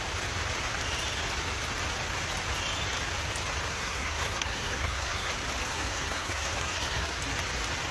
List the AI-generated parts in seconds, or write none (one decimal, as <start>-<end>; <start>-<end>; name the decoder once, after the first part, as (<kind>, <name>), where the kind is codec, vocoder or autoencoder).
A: 3.7-5.3 (codec, SNAC); 5.7-7.2

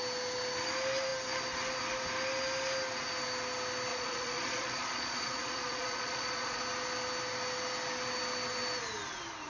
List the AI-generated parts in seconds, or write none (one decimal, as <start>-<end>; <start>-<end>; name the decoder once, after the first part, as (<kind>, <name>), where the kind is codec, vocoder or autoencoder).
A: 3.9-6.6 (vocoder, Vocos)